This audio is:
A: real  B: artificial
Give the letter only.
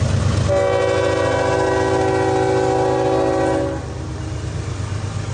A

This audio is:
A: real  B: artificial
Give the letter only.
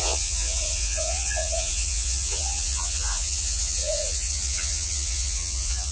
B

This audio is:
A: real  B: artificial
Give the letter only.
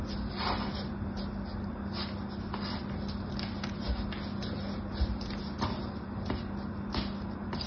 A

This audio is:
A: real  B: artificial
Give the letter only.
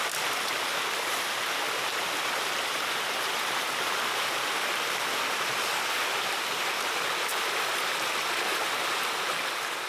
A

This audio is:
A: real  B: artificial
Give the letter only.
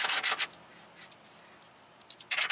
A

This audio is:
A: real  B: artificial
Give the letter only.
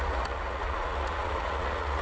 B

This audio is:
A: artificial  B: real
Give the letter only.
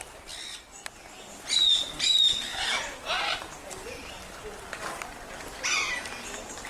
B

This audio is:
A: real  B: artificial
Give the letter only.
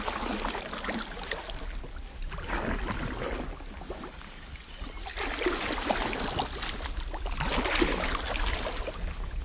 A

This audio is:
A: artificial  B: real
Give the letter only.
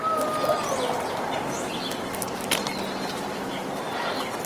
B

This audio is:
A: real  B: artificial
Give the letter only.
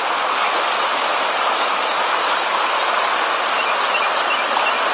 A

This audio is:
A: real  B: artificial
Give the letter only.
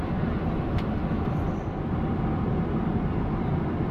A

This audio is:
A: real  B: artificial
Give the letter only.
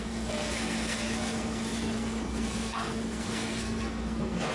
B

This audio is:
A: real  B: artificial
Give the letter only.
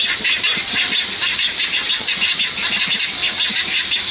A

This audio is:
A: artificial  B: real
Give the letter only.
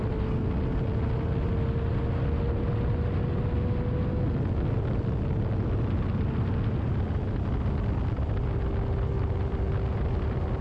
B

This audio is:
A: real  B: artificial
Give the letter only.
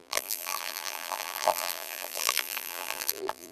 B